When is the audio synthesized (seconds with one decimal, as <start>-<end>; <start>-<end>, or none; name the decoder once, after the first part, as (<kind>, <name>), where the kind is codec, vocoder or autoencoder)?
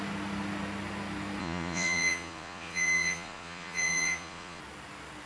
1.4-4.6 (vocoder, Vocos)